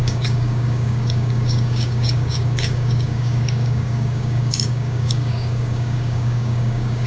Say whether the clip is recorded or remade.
remade